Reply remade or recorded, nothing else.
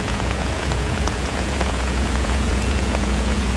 remade